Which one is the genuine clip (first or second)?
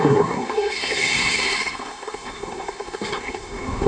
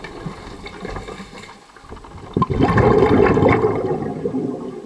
second